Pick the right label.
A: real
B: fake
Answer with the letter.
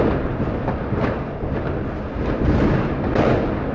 A